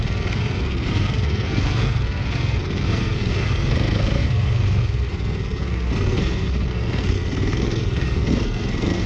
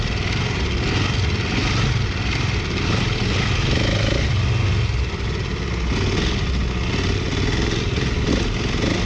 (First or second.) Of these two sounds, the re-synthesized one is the first